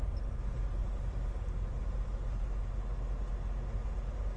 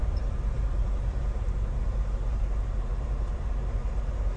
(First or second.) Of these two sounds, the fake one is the second